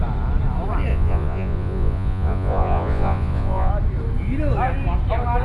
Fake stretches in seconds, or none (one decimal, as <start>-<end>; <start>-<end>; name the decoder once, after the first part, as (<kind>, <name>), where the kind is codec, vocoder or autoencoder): 0.9-3.7 (vocoder, Vocos)